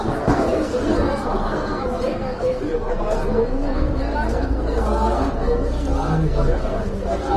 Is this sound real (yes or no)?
no